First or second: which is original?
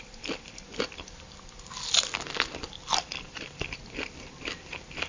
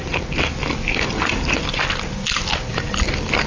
second